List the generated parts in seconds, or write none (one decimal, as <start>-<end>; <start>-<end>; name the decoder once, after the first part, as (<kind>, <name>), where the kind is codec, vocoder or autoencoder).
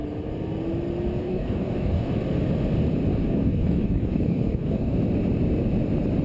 1.2-2.1 (codec, DAC); 3.1-5.0